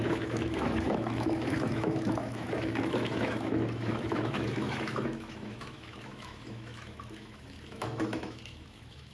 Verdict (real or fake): fake